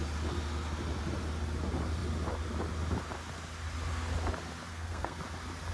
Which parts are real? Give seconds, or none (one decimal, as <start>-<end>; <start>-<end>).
0.0-4.7; 5.2-5.7